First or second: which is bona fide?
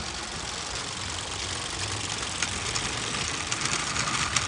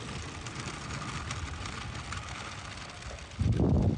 first